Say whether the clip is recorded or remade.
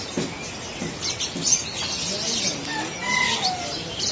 recorded